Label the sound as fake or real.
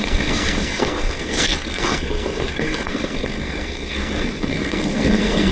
fake